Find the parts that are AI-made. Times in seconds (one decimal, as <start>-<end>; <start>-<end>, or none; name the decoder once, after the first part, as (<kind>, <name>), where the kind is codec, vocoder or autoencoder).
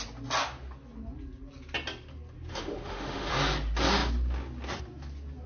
2.5-3.3 (autoencoder, DAC-VAE)